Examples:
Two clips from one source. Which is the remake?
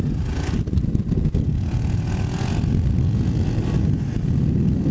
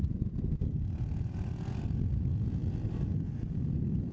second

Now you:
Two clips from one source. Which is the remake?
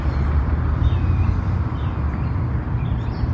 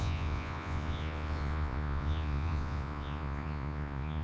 second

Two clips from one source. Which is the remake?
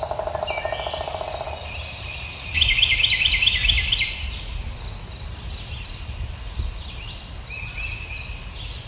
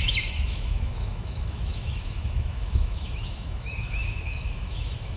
second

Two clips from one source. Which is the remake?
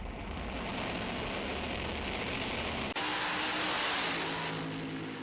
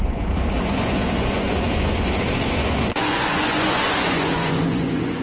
second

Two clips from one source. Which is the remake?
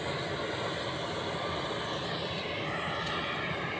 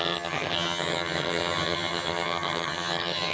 second